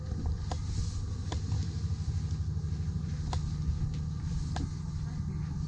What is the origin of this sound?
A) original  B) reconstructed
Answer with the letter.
A